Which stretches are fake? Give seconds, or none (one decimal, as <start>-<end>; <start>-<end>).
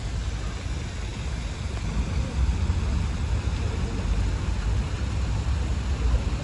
none